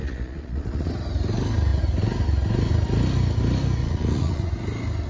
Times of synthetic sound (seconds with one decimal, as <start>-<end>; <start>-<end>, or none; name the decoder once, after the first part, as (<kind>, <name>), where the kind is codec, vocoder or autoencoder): 0.0-0.9 (vocoder, Vocos); 3.8-4.5